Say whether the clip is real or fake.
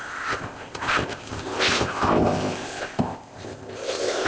fake